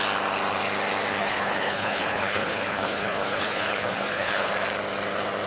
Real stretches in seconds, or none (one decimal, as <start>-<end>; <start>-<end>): 0.0-1.2; 4.5-5.5

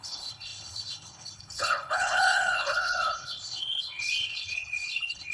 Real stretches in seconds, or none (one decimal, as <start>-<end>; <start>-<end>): none